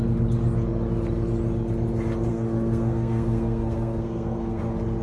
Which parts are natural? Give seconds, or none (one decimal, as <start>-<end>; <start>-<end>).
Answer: 0.0-2.3; 4.6-5.0